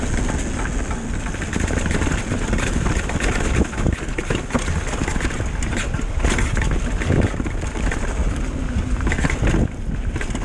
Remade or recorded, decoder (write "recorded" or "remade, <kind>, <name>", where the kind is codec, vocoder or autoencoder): recorded